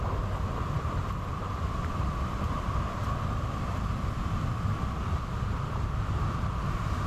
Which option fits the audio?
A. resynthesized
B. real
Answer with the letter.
A